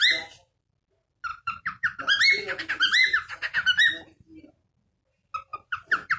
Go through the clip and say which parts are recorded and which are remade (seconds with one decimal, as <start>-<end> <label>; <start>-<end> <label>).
0.0-1.3 recorded; 1.3-2.0 remade; 2.0-3.0 recorded; 3.0-3.9 remade; 3.9-5.5 recorded; 5.5-6.2 remade